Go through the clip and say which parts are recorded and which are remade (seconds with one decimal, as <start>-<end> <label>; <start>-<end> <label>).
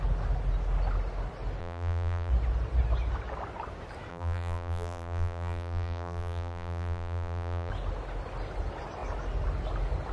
0.0-1.6 recorded; 1.6-2.3 remade; 2.3-4.1 recorded; 4.1-7.7 remade; 7.7-10.1 recorded